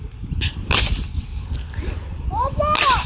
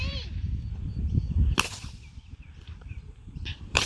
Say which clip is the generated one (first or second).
second